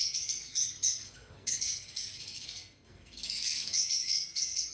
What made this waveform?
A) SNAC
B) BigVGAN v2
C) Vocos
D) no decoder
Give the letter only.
A